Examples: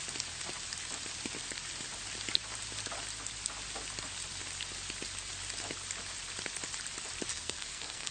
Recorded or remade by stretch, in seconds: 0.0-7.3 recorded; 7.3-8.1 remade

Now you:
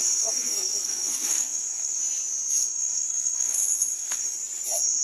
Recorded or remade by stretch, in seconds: 0.0-2.0 remade; 2.0-2.6 recorded; 2.6-4.2 remade; 4.2-5.0 recorded

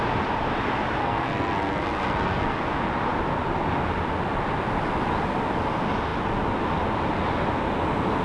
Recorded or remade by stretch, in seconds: 0.0-1.0 recorded; 1.0-2.6 remade; 2.6-8.2 recorded

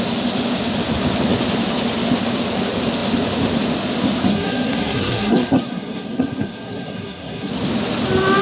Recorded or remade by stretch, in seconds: 0.0-4.3 recorded; 4.3-7.5 remade; 7.5-8.4 recorded

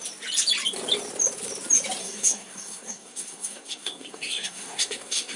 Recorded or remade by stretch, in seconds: 0.0-2.0 recorded; 2.0-5.4 remade

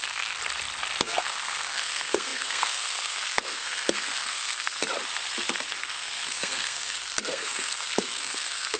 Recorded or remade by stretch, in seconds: 0.0-0.4 remade; 0.4-1.0 recorded; 1.0-4.8 remade; 4.8-5.8 recorded; 5.8-8.8 remade